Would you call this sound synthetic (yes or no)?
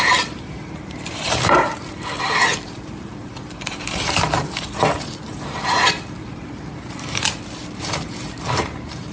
yes